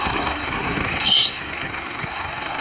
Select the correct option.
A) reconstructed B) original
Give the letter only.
A